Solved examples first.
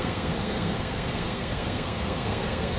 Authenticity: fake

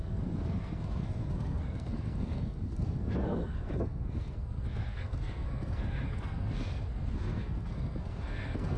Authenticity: fake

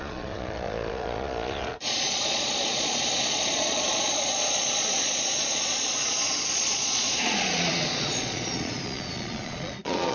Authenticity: fake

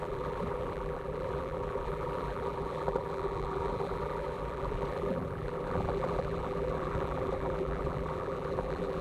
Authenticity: fake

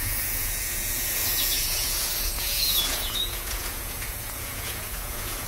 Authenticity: fake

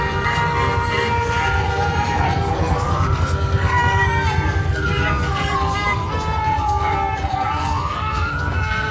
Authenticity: fake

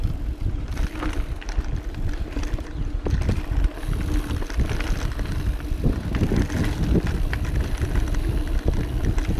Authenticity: real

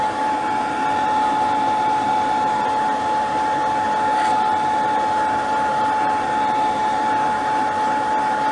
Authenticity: real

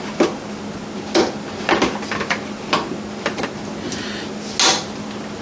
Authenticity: real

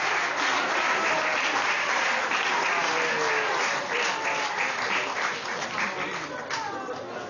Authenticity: real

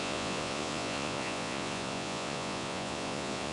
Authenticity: fake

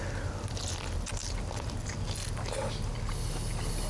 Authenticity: real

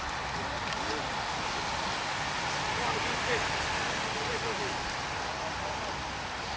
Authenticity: real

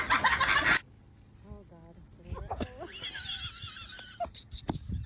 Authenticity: real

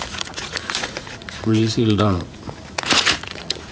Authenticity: fake